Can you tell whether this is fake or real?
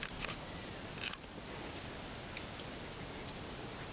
real